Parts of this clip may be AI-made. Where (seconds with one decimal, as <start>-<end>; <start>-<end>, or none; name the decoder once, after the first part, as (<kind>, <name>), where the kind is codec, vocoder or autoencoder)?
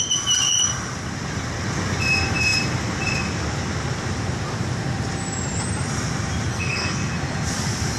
6.5-7.1 (codec, SNAC)